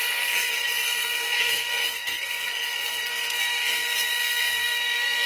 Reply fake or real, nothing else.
fake